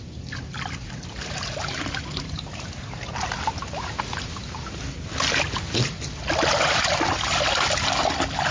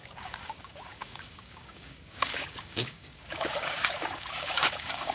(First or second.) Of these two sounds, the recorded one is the first